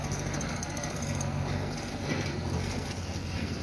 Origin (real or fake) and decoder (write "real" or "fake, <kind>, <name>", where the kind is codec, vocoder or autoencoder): fake, codec, SNAC